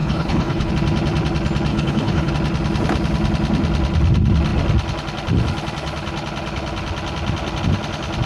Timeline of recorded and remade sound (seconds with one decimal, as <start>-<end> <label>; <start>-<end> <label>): 0.0-0.7 remade; 0.7-1.7 recorded; 1.7-2.3 remade; 2.3-8.3 recorded